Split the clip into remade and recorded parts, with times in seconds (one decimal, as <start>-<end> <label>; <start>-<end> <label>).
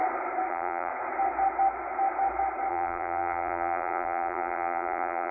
0.0-0.5 recorded; 0.5-0.9 remade; 0.9-2.7 recorded; 2.7-5.3 remade